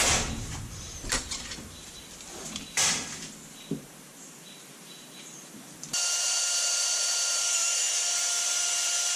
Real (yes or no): no